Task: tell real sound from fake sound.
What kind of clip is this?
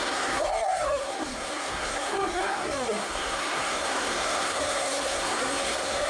fake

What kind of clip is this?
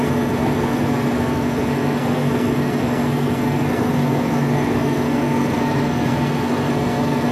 fake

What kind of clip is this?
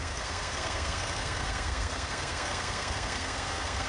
fake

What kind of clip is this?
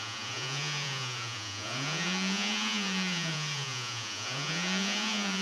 fake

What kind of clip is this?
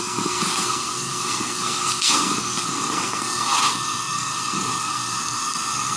fake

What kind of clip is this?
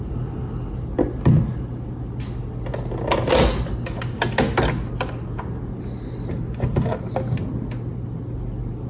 real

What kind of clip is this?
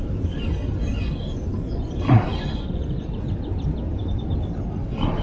real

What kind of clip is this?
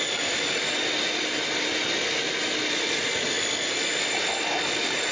real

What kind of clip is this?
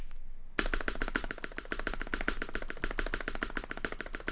real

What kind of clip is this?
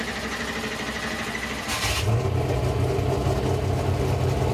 real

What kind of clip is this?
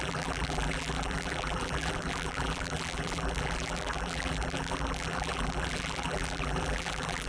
fake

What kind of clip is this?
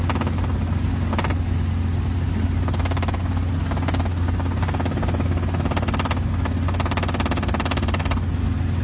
real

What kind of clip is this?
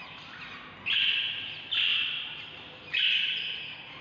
real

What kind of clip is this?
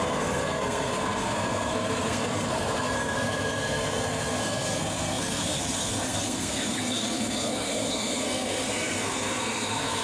fake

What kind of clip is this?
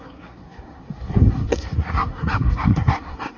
fake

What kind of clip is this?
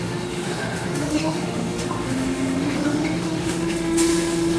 fake